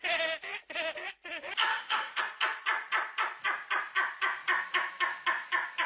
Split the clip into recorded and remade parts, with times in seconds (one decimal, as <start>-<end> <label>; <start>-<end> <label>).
0.0-1.7 recorded; 1.7-2.2 remade; 2.2-5.9 recorded